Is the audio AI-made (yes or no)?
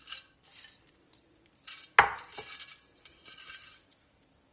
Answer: no